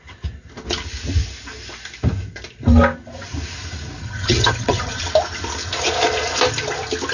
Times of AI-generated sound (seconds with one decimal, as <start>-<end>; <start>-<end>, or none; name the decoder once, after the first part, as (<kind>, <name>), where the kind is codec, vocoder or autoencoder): 4.0-5.0 (vocoder, HiFi-GAN)